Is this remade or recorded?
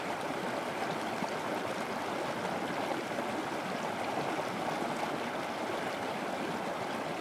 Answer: recorded